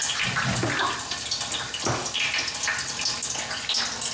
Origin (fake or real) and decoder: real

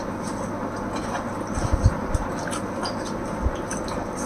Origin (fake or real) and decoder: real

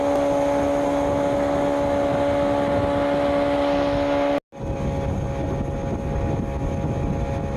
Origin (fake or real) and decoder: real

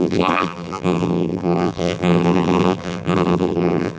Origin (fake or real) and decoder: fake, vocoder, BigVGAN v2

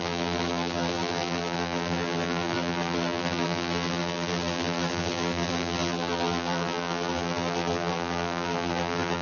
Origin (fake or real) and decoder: fake, vocoder, BigVGAN v2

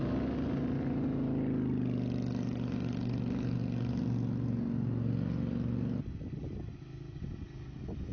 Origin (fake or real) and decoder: real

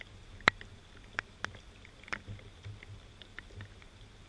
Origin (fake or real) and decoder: real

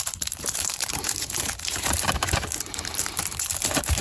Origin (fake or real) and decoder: fake, vocoder, BigVGAN v2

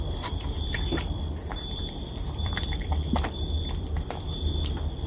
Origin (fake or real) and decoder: fake, vocoder, BigVGAN v2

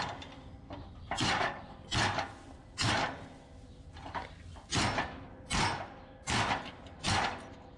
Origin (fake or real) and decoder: real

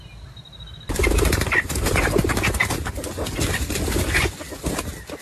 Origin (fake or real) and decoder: real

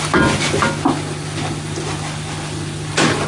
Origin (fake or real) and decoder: real